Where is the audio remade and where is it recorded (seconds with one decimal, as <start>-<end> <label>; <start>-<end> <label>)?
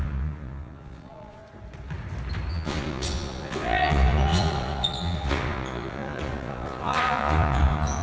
0.0-1.4 remade; 1.4-2.5 recorded; 2.5-8.0 remade